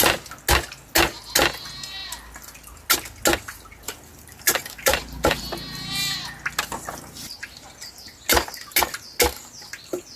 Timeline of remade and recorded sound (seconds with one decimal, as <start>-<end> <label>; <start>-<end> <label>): 0.0-4.1 recorded; 4.1-5.4 remade; 5.4-10.2 recorded

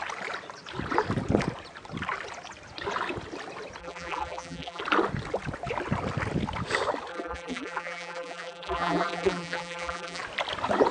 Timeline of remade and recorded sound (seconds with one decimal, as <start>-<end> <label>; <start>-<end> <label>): 0.0-3.8 recorded; 3.8-4.8 remade; 4.8-7.1 recorded; 7.1-10.2 remade; 10.2-10.9 recorded

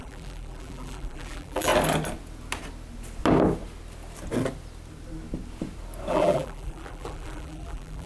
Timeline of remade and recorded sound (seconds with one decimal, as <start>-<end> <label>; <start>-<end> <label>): 0.0-1.7 remade; 1.7-6.1 recorded; 6.1-8.1 remade

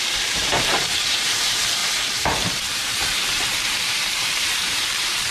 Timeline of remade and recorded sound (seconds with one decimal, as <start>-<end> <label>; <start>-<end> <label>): 0.0-5.3 remade